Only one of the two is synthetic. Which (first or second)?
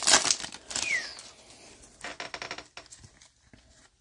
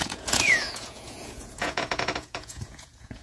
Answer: second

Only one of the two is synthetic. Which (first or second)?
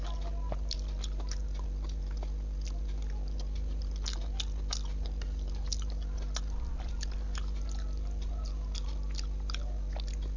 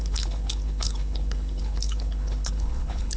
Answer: second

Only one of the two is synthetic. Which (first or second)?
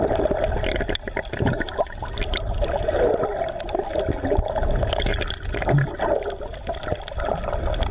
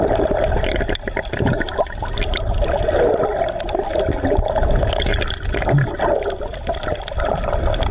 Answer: second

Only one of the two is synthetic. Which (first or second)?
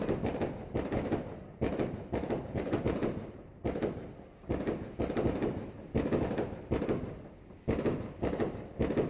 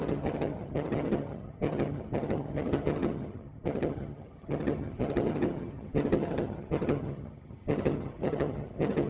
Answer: second